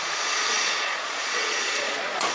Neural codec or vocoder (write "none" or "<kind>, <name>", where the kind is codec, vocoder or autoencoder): vocoder, Vocos